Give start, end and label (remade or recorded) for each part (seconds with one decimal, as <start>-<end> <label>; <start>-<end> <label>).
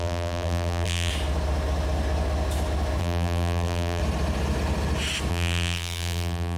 0.0-1.1 remade; 1.1-3.0 recorded; 3.0-4.0 remade; 4.0-5.3 recorded; 5.3-6.6 remade